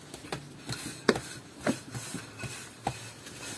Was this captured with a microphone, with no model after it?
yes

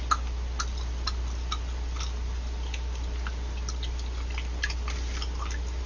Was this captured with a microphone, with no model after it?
yes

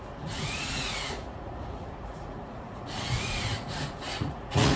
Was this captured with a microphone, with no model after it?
no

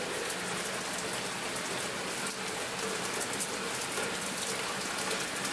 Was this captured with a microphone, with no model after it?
yes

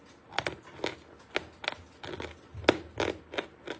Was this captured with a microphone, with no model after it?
yes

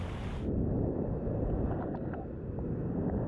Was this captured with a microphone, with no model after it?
yes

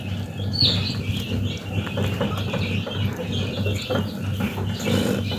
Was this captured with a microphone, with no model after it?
yes